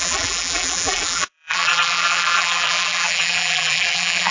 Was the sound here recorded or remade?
remade